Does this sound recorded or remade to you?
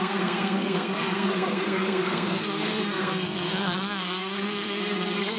remade